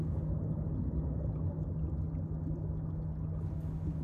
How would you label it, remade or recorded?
recorded